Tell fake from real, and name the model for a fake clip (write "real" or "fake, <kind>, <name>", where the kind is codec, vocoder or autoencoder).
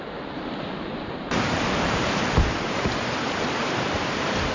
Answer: fake, vocoder, BigVGAN v2